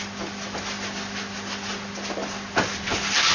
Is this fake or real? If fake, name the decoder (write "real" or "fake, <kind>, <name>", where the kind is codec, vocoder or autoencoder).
real